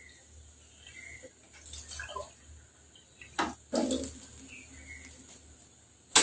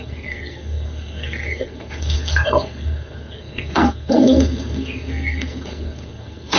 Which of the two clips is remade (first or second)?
second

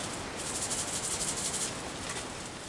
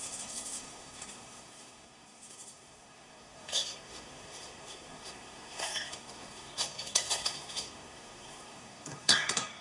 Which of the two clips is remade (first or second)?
second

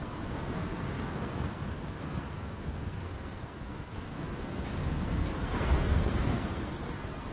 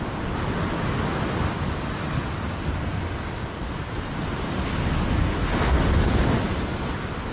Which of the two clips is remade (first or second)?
first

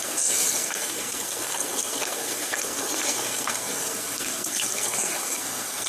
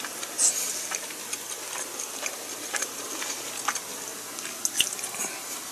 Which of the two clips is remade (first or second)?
first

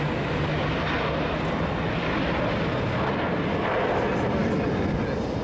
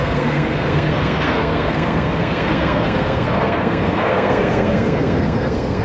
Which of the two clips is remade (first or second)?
second